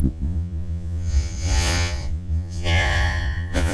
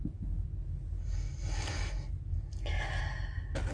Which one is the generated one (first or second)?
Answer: first